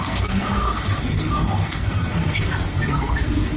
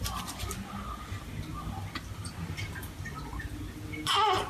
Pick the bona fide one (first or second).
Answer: second